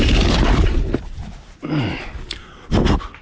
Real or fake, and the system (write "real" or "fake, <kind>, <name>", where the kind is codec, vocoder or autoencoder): real